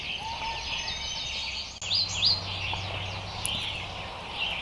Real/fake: real